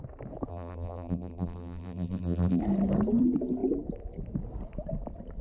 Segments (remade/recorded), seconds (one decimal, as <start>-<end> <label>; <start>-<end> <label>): 0.0-0.5 recorded; 0.5-2.6 remade; 2.6-5.4 recorded